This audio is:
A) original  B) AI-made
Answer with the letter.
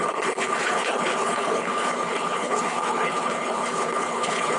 B